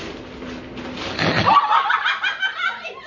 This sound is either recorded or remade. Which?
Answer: recorded